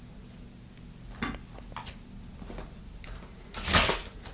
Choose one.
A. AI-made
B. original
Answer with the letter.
B